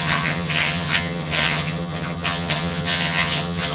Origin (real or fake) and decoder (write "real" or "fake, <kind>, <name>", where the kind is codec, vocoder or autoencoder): fake, vocoder, HiFi-GAN